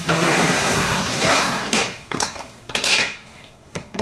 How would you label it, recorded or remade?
remade